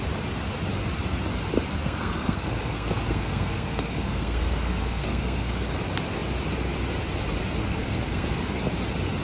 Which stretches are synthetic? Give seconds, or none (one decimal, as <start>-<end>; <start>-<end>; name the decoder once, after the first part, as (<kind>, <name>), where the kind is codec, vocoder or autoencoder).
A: 1.8-5.7 (codec, SNAC); 7.6-8.6